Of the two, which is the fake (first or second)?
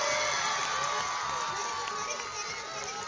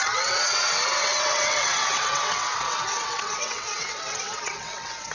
second